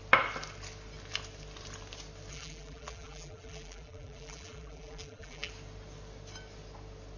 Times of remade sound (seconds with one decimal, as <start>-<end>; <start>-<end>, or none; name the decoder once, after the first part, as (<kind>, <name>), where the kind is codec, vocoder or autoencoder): 2.3-5.5 (vocoder, BigVGAN v2)